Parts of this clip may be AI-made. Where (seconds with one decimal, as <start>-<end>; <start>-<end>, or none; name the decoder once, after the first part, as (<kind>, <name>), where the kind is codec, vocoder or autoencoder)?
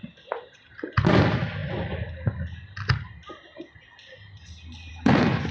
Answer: none